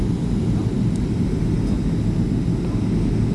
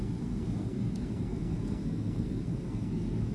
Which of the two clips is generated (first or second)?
second